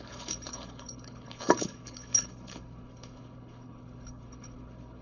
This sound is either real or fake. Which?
fake